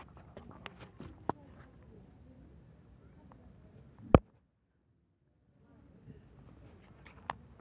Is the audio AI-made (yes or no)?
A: no